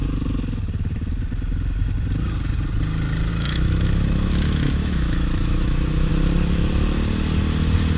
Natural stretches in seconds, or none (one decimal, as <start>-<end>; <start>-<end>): 0.0-3.3; 6.1-8.0